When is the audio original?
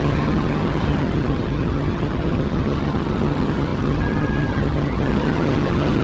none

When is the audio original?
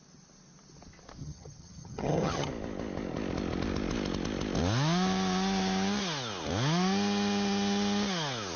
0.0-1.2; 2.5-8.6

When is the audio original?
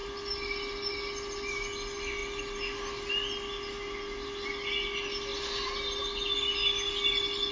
0.0-7.5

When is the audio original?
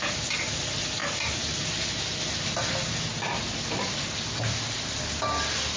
0.0-5.8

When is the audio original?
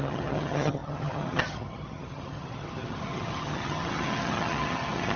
none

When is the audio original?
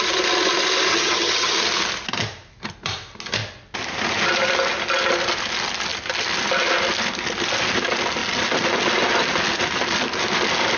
0.0-0.9; 1.5-10.8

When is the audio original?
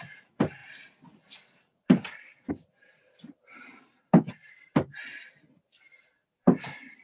0.0-7.0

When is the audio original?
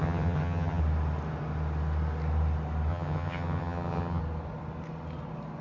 0.8-2.9; 4.2-5.6